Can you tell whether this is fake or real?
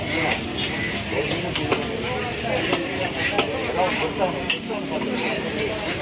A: real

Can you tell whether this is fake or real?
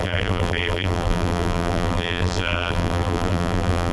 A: fake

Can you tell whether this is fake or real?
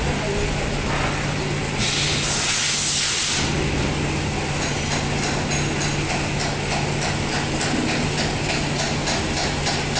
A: real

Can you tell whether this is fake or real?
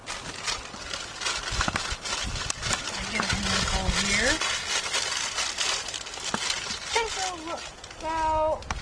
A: real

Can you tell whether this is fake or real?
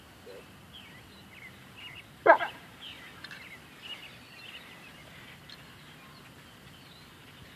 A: fake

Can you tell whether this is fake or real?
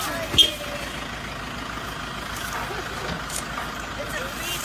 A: real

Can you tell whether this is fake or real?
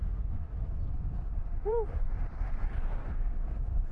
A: fake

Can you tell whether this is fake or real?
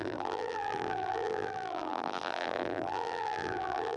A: fake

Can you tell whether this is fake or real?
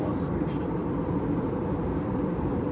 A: fake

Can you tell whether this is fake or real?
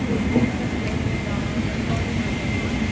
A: real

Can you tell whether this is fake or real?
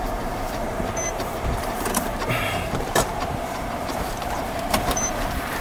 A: fake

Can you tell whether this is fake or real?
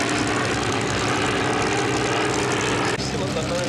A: real